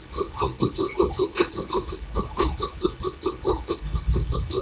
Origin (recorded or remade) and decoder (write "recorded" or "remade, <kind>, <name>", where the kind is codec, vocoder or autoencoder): remade, codec, HILCodec